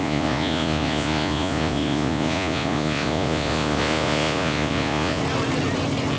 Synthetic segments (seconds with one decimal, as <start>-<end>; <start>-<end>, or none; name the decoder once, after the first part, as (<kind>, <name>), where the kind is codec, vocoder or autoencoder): 0.0-5.2 (vocoder, Vocos)